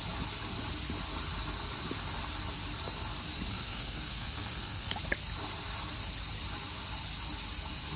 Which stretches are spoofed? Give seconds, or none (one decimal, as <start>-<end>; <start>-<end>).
3.5-4.9